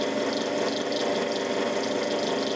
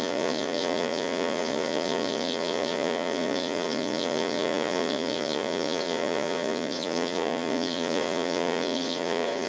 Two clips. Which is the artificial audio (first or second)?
second